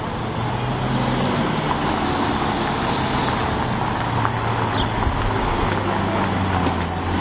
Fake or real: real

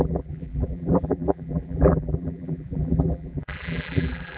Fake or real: fake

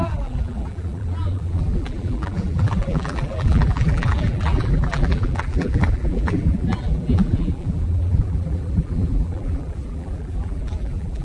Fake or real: fake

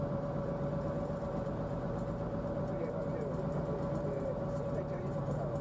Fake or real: fake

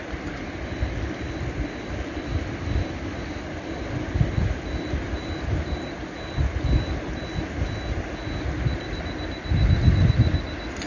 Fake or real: real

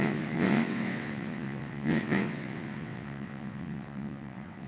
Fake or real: fake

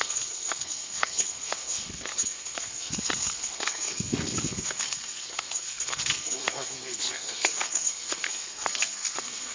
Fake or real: fake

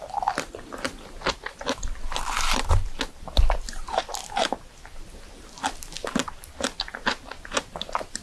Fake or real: real